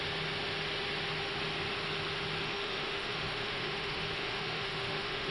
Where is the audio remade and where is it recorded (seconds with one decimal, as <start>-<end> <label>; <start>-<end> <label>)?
0.0-2.4 recorded; 2.4-5.3 remade